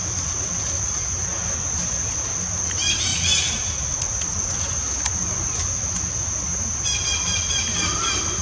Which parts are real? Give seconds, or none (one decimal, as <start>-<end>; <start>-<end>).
0.0-3.1; 4.7-8.4